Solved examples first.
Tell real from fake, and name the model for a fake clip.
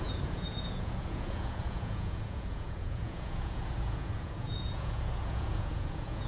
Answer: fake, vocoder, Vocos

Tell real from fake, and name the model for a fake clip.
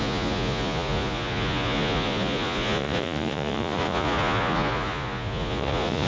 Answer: fake, vocoder, Vocos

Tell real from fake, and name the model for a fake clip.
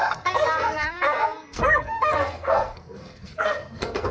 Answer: fake, codec, SNAC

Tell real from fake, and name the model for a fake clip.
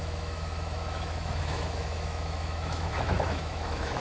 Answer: fake, autoencoder, DAC-VAE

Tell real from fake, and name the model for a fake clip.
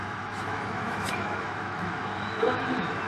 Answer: fake, autoencoder, DAC-VAE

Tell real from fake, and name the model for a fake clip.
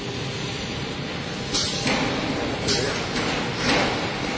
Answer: real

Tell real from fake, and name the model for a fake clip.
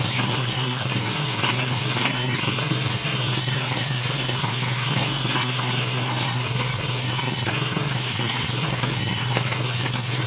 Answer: fake, codec, SNAC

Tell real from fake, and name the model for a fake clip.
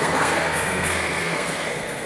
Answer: fake, codec, SNAC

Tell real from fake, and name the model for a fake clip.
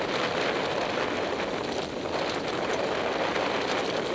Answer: real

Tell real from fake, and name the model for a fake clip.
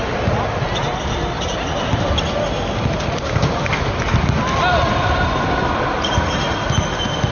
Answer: real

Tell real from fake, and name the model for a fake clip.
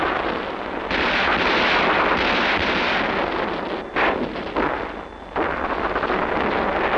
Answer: real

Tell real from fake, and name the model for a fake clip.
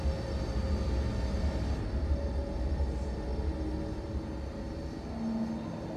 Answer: real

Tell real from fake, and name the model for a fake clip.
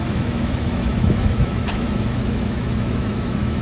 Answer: fake, autoencoder, DAC-VAE